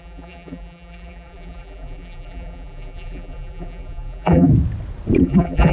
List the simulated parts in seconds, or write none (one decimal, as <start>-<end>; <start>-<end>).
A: 0.0-4.5; 5.2-5.7